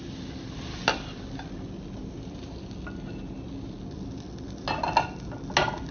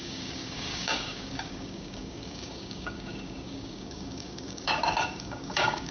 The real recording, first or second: first